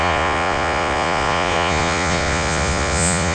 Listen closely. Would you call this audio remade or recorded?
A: remade